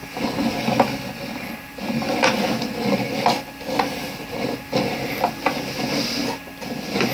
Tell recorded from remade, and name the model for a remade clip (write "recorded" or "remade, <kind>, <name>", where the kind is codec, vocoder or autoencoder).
recorded